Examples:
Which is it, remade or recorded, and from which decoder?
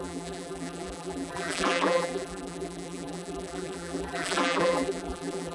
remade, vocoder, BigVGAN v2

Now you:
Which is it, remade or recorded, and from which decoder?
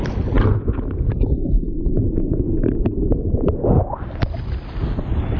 recorded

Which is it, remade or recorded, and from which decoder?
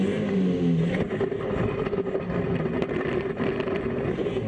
recorded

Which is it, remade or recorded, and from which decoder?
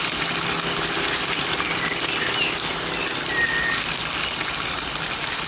recorded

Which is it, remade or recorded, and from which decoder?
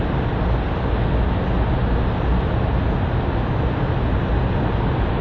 recorded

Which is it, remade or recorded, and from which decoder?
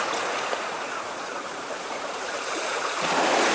remade, vocoder, Vocos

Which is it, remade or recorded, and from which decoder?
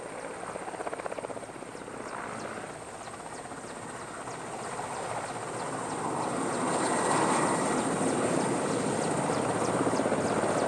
recorded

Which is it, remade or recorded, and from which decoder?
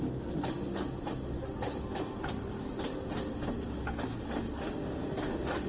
recorded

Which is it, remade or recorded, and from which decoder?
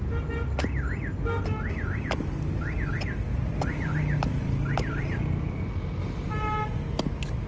recorded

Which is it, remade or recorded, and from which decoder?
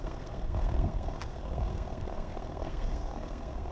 remade, codec, SNAC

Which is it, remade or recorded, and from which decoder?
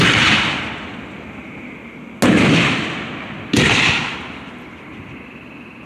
recorded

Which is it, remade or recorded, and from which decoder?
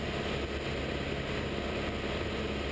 recorded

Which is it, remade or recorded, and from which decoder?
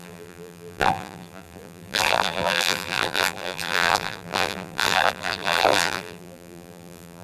remade, vocoder, BigVGAN v2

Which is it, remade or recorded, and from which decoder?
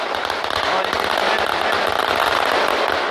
recorded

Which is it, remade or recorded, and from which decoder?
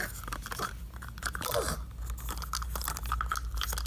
recorded